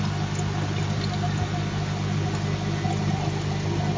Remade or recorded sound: recorded